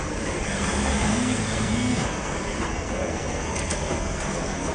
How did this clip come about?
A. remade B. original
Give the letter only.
A